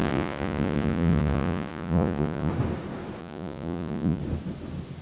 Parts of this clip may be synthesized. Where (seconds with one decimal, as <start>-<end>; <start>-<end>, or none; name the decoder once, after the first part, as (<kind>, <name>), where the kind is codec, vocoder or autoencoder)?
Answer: 0.0-2.5 (vocoder, Vocos); 3.2-4.2